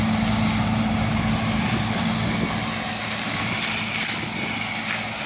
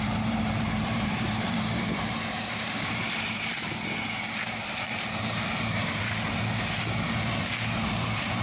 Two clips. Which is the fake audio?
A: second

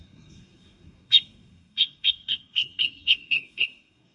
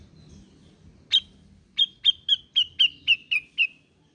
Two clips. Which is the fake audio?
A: first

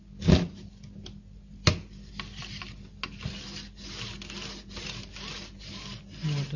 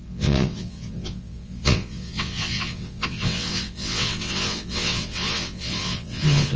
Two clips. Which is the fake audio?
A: second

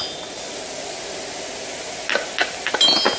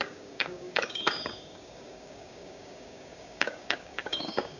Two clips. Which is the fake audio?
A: second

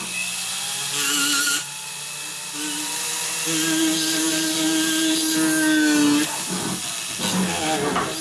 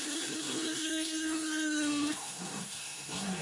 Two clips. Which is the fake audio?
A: second